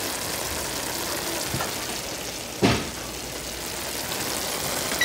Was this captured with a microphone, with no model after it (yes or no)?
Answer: yes